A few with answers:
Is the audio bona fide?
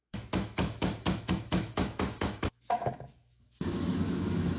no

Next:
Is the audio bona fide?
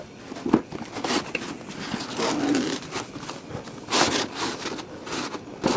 yes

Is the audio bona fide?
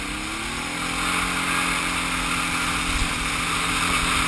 yes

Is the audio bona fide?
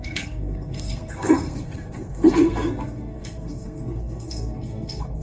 no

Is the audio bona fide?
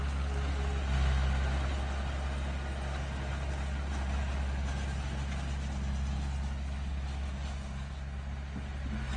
yes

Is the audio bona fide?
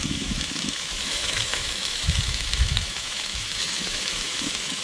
no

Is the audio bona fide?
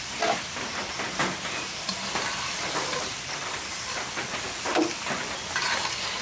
no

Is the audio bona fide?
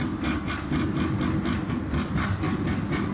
yes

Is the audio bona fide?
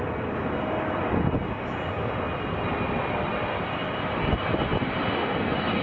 yes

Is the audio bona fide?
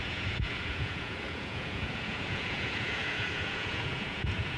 no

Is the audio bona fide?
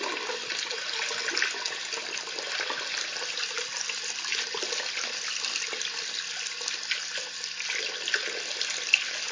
yes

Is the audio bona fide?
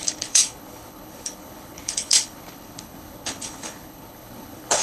no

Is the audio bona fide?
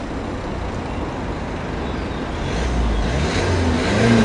yes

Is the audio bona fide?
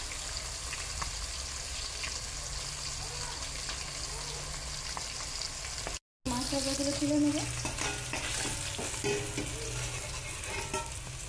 yes